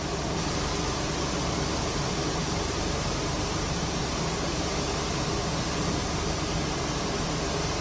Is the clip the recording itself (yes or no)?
yes